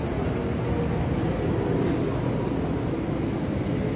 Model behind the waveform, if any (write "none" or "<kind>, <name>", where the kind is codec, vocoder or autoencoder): none